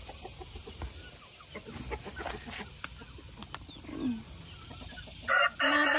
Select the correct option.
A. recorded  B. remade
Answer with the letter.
A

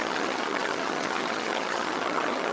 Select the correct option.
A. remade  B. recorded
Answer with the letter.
A